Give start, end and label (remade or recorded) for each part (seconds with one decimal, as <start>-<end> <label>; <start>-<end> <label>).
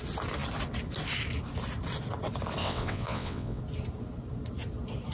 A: 0.0-2.6 recorded; 2.6-3.6 remade; 3.6-5.1 recorded